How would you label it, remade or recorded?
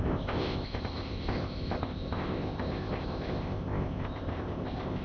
remade